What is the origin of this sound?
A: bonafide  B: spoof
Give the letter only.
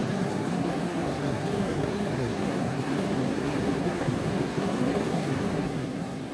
B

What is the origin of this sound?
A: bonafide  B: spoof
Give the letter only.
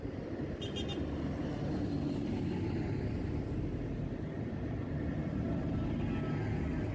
A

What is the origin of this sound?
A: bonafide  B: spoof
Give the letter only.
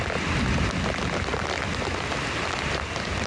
A